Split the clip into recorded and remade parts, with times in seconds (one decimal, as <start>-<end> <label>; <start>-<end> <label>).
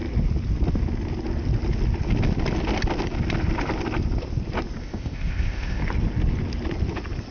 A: 0.0-4.8 recorded; 4.8-5.8 remade; 5.8-7.3 recorded